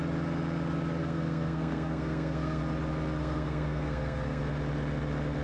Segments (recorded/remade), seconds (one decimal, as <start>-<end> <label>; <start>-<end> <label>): 0.0-1.0 recorded; 1.0-2.6 remade; 2.6-3.2 recorded; 3.2-4.4 remade; 4.4-5.4 recorded